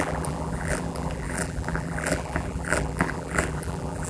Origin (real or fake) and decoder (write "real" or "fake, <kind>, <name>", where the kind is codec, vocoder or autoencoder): fake, vocoder, BigVGAN v2